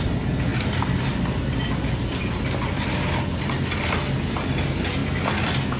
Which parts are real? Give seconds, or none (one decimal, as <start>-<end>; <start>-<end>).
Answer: 0.0-5.8